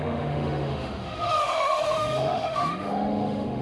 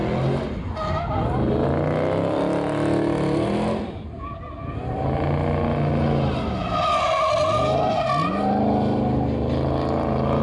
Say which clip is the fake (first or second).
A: first